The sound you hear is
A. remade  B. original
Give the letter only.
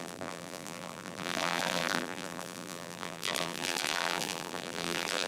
A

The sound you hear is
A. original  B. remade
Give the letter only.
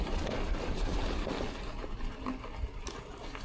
A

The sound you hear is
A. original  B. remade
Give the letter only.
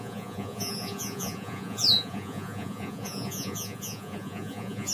B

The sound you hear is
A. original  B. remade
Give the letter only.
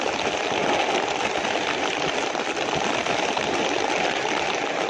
A